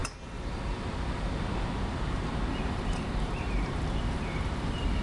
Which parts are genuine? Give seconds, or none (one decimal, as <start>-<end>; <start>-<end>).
0.6-2.5